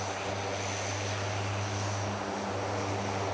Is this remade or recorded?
recorded